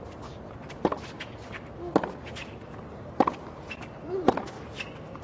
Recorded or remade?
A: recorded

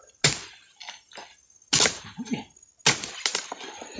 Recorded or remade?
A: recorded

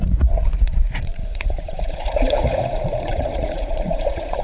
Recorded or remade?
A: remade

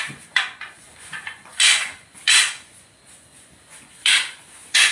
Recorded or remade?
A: remade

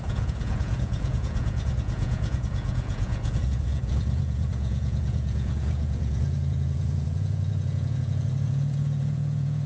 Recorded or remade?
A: remade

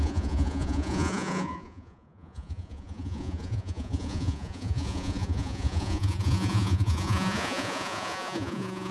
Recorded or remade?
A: remade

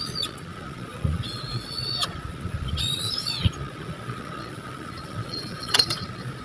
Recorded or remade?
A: remade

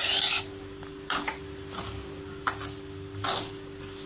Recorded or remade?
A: recorded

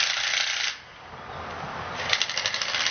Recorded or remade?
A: recorded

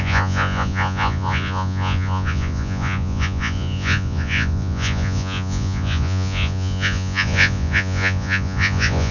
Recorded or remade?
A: remade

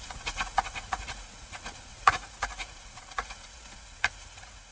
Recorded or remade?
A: remade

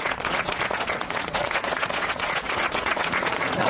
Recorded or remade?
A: remade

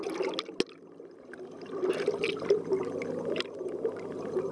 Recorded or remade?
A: recorded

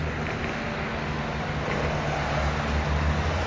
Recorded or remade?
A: recorded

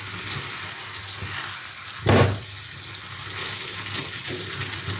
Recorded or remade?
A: recorded